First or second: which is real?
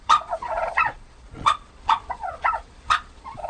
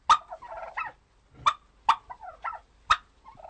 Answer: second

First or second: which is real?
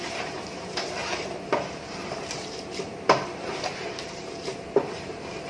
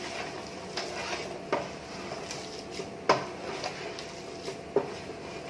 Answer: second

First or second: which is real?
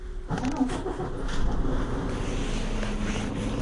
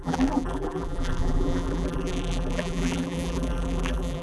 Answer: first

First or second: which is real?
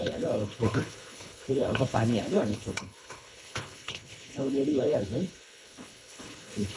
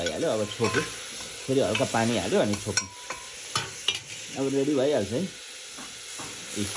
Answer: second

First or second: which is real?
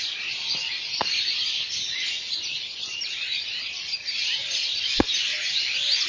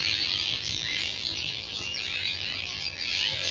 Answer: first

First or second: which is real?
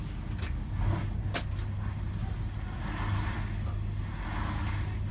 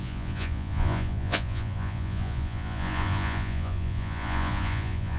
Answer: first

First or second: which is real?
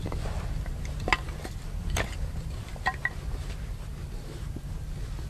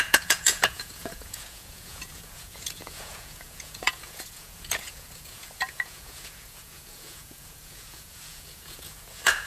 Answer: first